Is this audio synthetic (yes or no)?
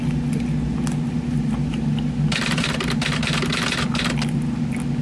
no